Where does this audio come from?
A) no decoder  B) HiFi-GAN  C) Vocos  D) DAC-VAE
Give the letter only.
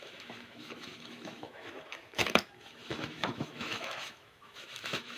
D